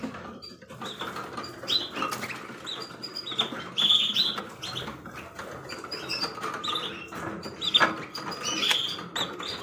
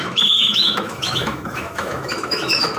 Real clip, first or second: first